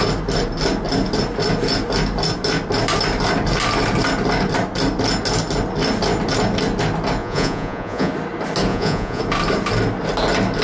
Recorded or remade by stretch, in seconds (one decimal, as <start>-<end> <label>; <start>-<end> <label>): 0.0-7.2 recorded; 7.2-8.1 remade; 8.1-8.7 recorded; 8.7-9.2 remade; 9.2-10.6 recorded